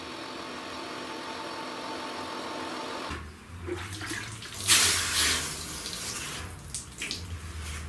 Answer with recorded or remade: recorded